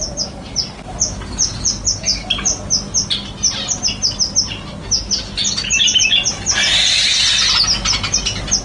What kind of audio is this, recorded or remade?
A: recorded